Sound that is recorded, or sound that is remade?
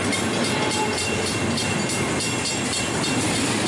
remade